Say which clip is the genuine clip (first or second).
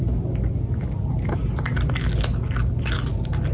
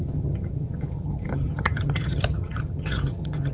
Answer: first